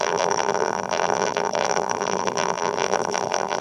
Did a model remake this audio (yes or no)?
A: yes